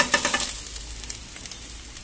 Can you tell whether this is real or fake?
real